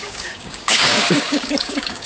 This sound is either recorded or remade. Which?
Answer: remade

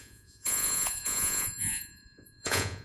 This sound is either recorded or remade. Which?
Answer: remade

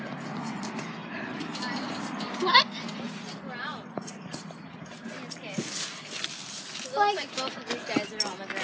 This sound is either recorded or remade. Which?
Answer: recorded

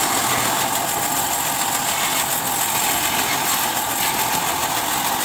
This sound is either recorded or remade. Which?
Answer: recorded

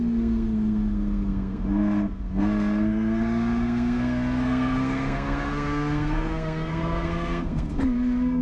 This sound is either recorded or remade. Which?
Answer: remade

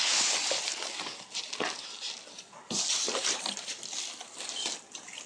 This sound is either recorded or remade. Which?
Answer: recorded